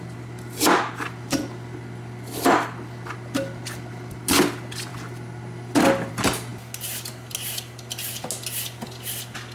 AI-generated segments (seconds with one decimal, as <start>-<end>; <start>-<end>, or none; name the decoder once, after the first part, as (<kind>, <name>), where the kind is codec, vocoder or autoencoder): none